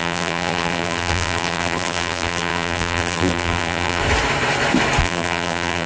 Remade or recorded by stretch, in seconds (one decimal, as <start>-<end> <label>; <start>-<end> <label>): 0.0-4.0 remade; 4.0-5.0 recorded; 5.0-5.9 remade